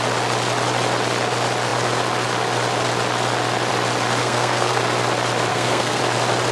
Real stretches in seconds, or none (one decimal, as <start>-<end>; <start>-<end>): 0.0-4.2; 4.8-5.5; 6.0-6.5